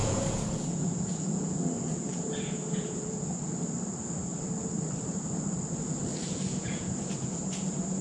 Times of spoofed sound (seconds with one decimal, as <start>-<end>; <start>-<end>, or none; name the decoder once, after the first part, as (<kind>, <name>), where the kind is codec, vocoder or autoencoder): 0.0-3.3 (vocoder, Vocos); 6.1-8.0